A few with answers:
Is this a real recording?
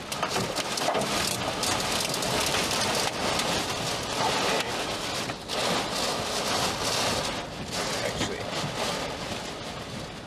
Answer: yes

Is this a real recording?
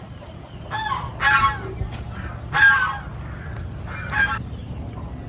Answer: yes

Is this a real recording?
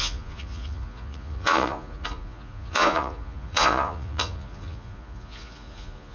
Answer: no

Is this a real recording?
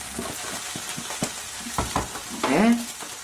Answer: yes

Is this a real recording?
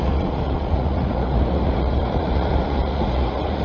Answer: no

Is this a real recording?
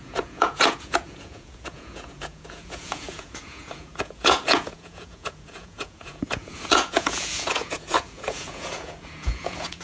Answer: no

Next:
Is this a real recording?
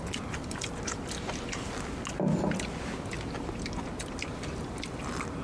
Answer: yes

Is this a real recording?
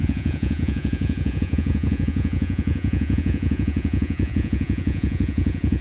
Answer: no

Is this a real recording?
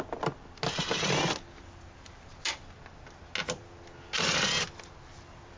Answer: yes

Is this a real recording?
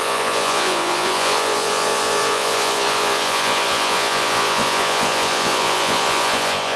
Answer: no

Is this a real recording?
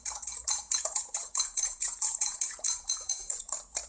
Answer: no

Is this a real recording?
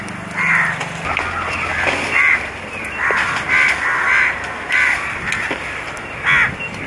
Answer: yes